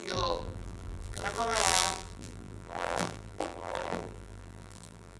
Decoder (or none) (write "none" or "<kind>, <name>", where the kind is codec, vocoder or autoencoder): vocoder, BigVGAN v2